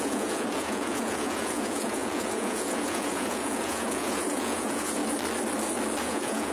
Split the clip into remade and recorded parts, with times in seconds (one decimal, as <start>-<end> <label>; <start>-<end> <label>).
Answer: 0.0-5.0 remade; 5.0-6.0 recorded; 6.0-6.5 remade